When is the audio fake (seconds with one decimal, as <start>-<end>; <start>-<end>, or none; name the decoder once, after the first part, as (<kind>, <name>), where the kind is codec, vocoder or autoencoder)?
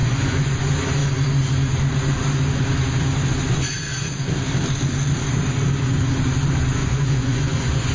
0.0-0.6 (vocoder, Vocos); 6.8-7.9